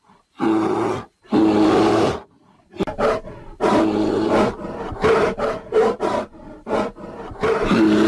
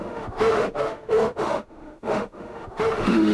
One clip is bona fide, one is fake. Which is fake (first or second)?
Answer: second